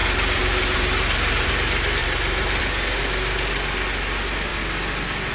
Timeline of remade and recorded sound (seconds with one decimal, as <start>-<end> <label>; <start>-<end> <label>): 0.0-1.5 remade; 1.5-2.0 recorded; 2.0-2.6 remade; 2.6-5.3 recorded